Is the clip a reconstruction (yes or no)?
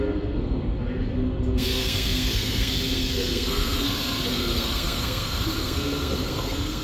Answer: yes